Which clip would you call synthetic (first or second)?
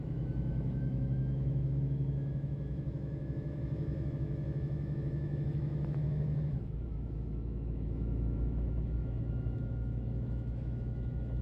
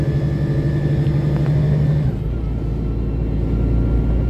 first